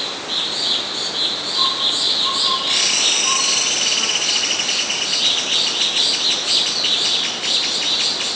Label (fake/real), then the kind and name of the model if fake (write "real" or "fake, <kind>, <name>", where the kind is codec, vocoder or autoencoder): real